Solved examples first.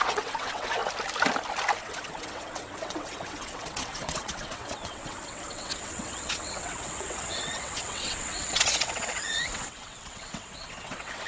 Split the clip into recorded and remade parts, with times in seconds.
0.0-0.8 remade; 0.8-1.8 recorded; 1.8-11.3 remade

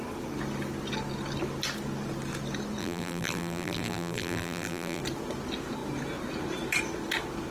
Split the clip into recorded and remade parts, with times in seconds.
0.0-2.8 recorded; 2.8-5.0 remade; 5.0-7.5 recorded